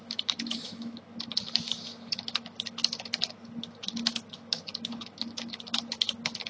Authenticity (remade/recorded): remade